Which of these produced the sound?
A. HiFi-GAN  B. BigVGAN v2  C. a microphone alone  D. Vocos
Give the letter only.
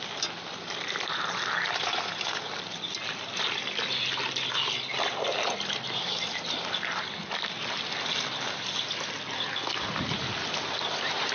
C